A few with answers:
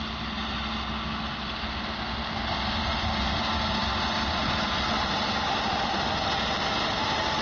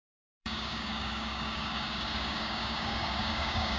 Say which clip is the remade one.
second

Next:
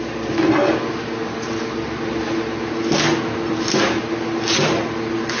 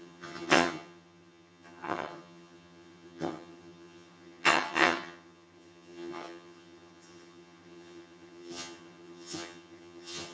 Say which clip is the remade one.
second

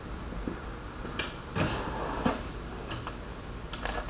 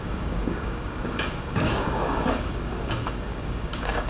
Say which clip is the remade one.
second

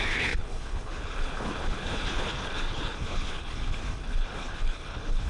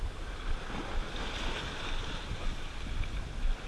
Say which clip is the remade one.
first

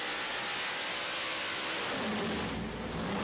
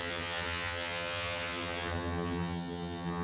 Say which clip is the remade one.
second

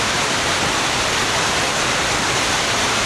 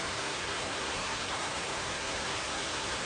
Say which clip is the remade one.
second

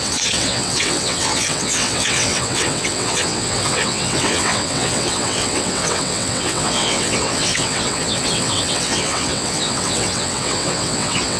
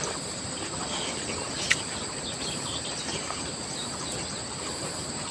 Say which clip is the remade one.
first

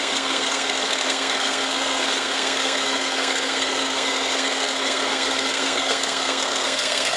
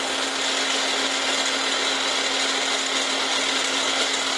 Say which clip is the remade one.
first